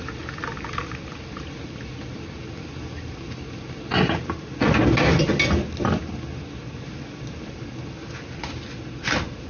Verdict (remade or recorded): recorded